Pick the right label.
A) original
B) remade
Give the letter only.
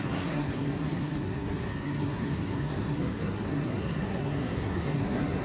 B